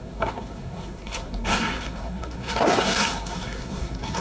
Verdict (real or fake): fake